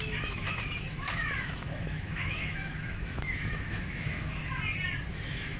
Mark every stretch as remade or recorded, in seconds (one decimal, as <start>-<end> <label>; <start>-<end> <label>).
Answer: 0.0-4.4 remade; 4.4-5.1 recorded; 5.1-5.6 remade